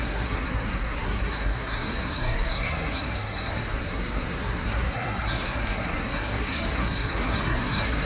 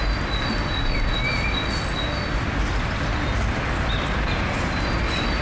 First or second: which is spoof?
first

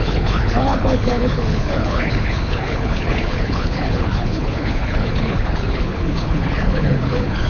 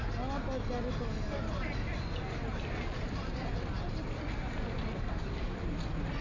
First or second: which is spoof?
first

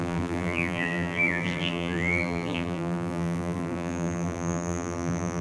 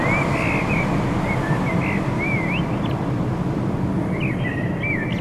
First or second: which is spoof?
first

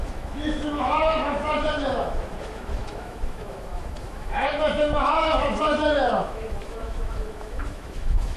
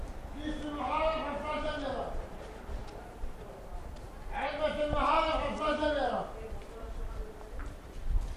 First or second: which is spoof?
first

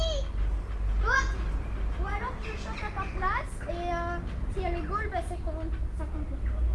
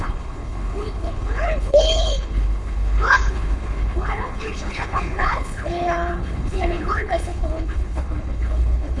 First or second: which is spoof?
second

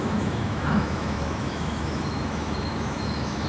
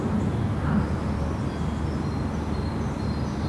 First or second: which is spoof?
first